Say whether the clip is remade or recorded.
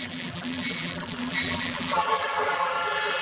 remade